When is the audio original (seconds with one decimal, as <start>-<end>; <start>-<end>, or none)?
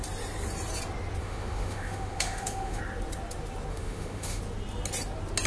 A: 0.0-1.2; 2.8-3.7; 4.4-5.5